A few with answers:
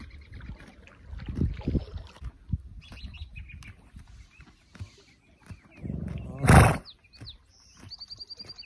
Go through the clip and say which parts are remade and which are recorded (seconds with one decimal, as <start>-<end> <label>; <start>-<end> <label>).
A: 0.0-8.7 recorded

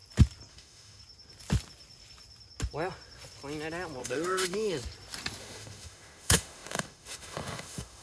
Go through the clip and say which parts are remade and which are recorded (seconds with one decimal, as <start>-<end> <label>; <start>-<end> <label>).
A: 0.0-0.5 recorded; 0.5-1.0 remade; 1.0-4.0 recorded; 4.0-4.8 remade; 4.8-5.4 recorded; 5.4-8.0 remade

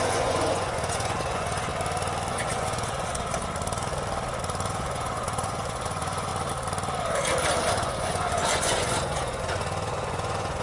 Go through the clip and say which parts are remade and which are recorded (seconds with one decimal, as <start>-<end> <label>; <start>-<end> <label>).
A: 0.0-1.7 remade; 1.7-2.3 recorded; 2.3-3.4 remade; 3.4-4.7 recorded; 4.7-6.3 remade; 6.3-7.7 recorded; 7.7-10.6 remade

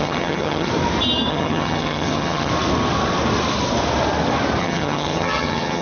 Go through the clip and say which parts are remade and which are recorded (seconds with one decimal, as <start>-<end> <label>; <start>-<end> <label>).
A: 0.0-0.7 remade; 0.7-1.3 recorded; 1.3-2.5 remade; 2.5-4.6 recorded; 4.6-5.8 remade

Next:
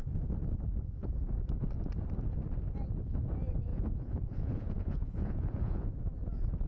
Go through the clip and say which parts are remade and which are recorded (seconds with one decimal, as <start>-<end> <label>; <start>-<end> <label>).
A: 0.0-3.7 recorded; 3.7-6.0 remade; 6.0-6.7 recorded

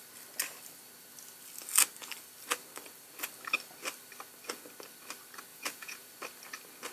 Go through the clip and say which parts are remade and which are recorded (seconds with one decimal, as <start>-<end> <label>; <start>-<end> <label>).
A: 0.0-5.5 recorded; 5.5-6.1 remade; 6.1-6.9 recorded

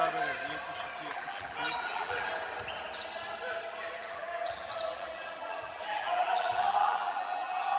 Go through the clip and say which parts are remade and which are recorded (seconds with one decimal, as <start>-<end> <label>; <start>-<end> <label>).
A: 0.0-1.1 recorded; 1.1-2.3 remade; 2.3-4.0 recorded; 4.0-7.8 remade